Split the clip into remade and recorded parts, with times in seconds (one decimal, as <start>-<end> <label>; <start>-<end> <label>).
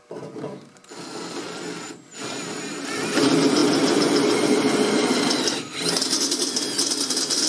0.0-7.5 recorded